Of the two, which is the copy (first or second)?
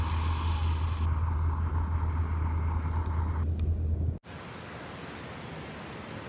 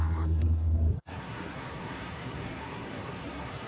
second